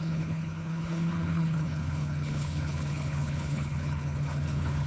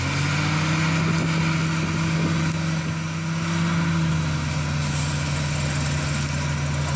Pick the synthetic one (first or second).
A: first